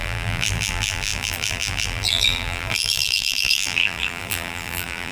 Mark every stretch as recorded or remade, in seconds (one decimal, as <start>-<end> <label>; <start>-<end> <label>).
0.0-5.1 remade